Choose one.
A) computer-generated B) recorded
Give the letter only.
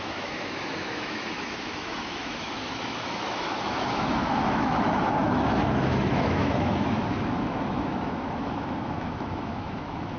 A